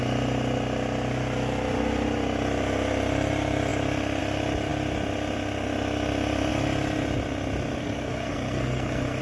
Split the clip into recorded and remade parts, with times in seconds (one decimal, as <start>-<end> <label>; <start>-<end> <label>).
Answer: 0.0-7.8 recorded; 7.8-9.2 remade